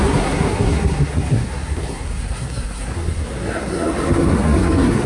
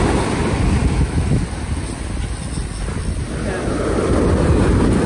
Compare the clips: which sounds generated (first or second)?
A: first